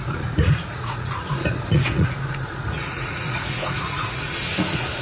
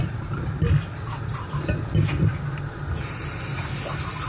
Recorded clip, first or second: second